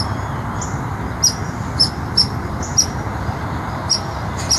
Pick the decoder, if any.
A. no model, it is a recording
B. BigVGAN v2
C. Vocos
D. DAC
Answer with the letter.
A